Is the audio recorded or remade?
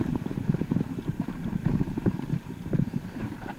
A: remade